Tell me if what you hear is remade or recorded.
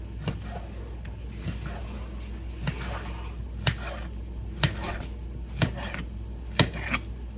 recorded